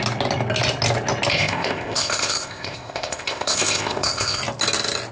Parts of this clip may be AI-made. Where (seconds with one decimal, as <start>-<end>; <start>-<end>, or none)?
1.3-4.4